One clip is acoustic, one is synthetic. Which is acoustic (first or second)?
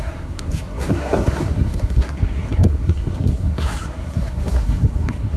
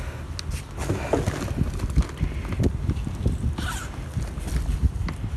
second